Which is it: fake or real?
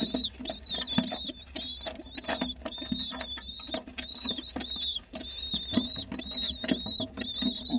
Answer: real